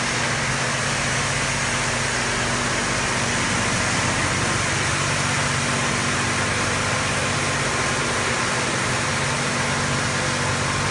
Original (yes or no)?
yes